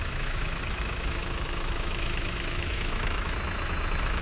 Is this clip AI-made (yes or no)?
yes